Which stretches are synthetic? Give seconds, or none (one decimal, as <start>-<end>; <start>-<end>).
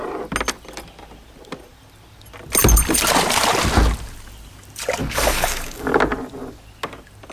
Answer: 5.0-6.0